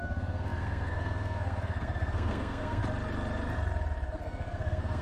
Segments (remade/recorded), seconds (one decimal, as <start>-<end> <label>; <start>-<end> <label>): 0.0-2.8 remade; 2.8-4.1 recorded; 4.1-5.0 remade